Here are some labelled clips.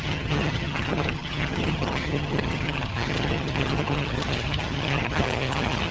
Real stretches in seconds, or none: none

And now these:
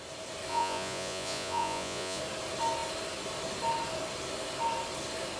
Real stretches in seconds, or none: 0.0-0.5; 2.2-5.4

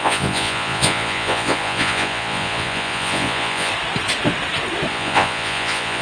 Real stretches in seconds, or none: 3.7-4.9

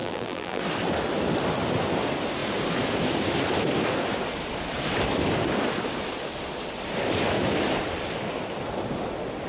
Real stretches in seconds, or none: 0.6-9.5

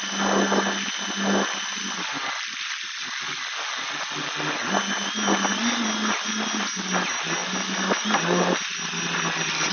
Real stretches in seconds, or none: 0.0-9.7

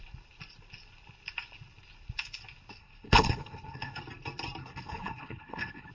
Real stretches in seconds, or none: 0.0-2.8; 4.0-4.6

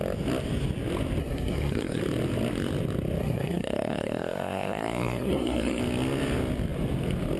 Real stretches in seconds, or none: 0.0-1.2; 2.0-3.2; 5.8-7.4